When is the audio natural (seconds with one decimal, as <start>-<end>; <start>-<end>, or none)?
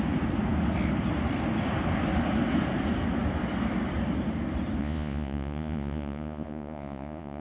0.0-4.8